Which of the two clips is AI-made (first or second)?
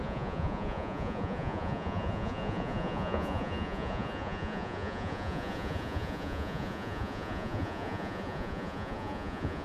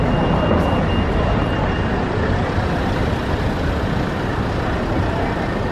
first